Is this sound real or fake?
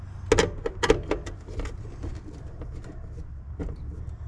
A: real